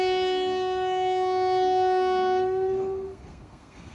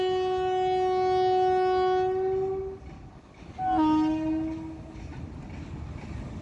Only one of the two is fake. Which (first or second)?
first